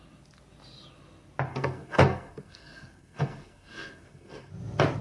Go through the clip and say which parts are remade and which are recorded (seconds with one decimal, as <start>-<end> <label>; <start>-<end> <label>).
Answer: 0.0-1.5 recorded; 1.5-4.5 remade; 4.5-5.0 recorded